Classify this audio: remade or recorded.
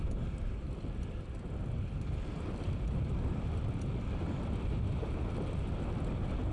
recorded